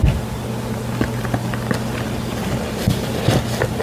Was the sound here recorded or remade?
recorded